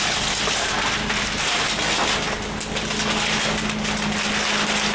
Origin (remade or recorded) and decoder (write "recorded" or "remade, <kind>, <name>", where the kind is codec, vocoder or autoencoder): recorded